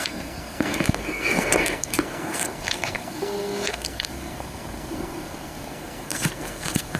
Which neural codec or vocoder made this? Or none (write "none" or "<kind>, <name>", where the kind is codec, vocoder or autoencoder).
codec, SNAC